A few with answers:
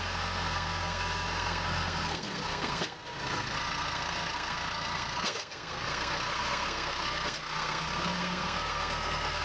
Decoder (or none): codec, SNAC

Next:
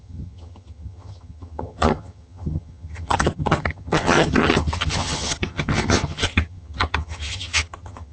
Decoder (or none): vocoder, HiFi-GAN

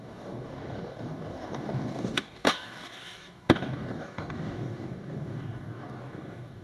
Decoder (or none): codec, DAC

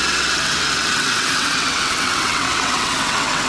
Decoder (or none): vocoder, WaveNeXt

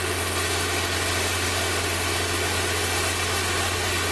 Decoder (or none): none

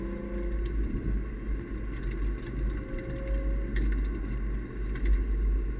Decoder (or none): none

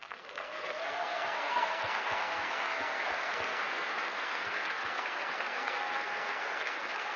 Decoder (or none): codec, SNAC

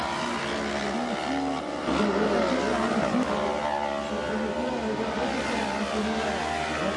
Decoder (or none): none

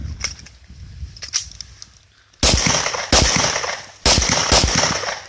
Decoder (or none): none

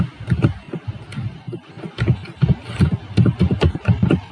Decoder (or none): none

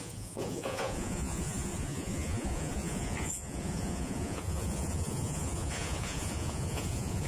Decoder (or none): vocoder, Vocos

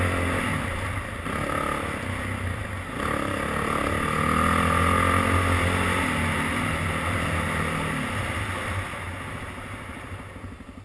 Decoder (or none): none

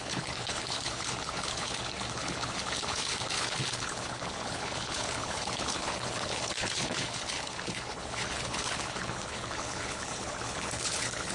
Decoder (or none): codec, HILCodec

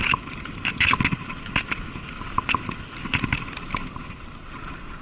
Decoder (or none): none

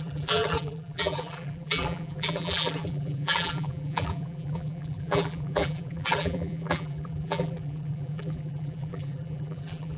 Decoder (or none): vocoder, BigVGAN v2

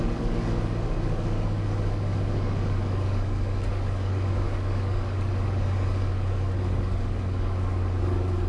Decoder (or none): codec, DAC